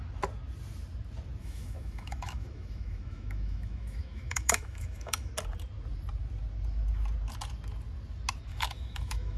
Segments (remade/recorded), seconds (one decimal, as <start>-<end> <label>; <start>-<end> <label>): 0.0-1.4 recorded; 1.4-5.3 remade; 5.3-8.5 recorded; 8.5-9.4 remade

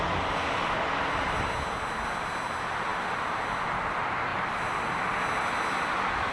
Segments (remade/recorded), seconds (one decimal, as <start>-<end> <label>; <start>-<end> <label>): 0.0-6.3 recorded

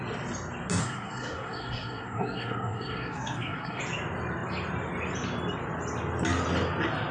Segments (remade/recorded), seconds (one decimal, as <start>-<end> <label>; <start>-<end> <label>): 0.0-0.8 recorded; 0.8-3.8 remade; 3.8-7.1 recorded